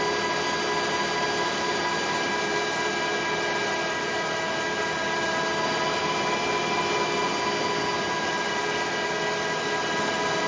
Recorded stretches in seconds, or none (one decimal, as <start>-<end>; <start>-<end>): 0.0-10.5